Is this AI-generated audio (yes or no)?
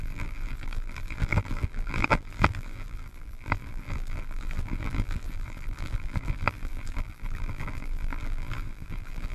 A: yes